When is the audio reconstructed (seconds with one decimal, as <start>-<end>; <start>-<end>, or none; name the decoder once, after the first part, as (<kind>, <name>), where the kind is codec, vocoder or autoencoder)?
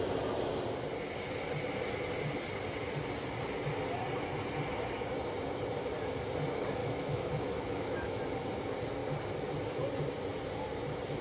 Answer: 6.8-8.2 (autoencoder, DAC-VAE)